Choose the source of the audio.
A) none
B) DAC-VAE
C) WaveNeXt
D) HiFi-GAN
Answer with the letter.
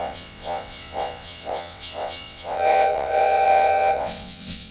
C